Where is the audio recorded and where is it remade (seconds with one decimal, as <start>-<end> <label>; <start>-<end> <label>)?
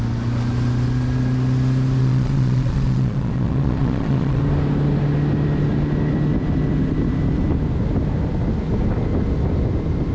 0.0-2.0 recorded; 2.0-4.4 remade; 4.4-10.1 recorded